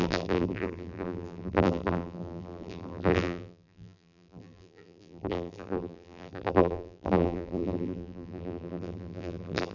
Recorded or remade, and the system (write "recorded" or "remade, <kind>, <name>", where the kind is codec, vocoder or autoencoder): remade, vocoder, BigVGAN v2